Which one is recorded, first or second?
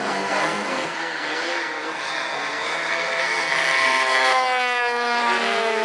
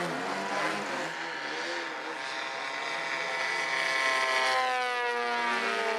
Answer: second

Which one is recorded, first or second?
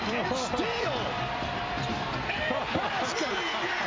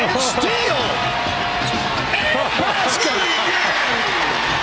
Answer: second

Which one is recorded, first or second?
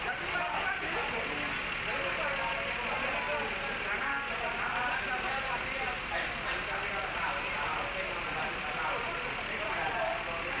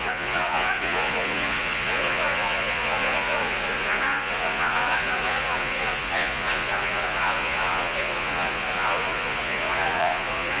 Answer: first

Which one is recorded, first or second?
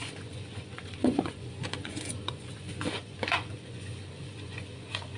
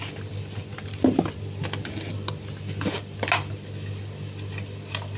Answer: second